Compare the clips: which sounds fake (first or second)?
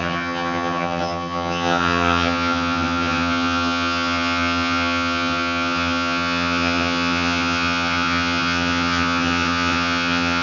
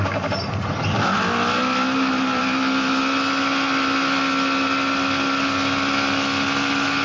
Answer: first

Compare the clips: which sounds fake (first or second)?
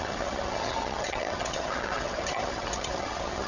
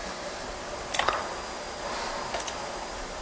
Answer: first